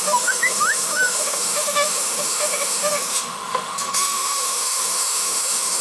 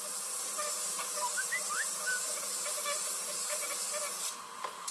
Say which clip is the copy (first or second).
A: first